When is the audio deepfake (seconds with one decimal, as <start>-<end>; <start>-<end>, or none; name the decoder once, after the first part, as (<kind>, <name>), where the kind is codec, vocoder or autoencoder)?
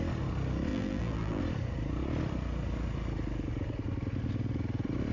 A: 0.7-1.4 (vocoder, BigVGAN v2)